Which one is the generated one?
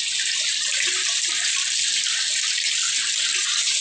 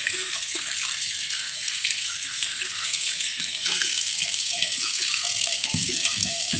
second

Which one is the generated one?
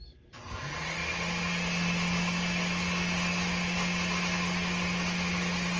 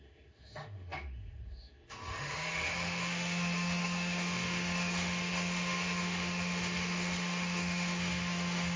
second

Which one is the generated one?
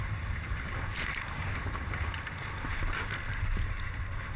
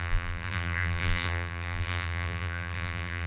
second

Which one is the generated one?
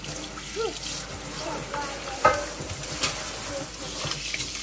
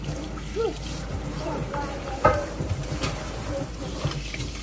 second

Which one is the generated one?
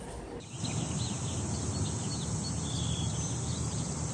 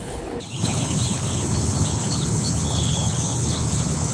second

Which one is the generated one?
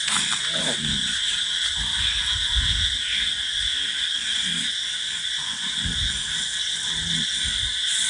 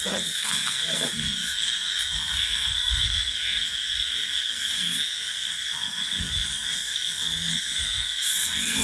second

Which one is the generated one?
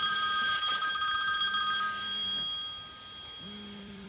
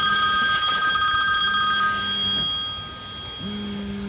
first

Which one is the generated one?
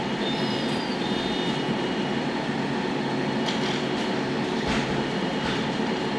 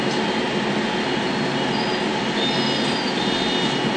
first